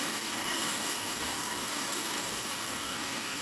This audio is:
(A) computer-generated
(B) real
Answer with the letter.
A